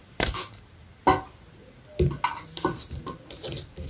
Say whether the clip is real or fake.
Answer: real